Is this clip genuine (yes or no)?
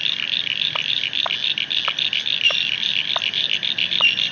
yes